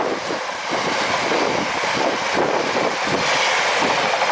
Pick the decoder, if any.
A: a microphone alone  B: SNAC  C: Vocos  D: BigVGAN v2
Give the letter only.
A